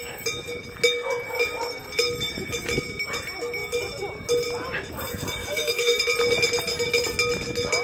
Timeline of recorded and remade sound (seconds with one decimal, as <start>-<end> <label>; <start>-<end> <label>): 0.0-5.4 recorded; 5.4-6.0 remade; 6.0-7.8 recorded